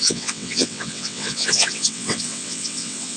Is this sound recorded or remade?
remade